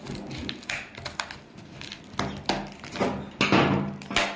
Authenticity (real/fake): real